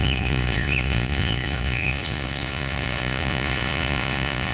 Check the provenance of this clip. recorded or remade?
remade